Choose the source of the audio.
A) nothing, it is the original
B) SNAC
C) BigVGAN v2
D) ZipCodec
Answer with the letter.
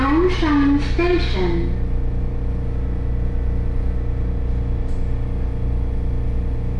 A